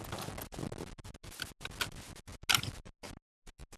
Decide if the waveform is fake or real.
real